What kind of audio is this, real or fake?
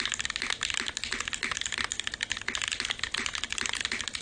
real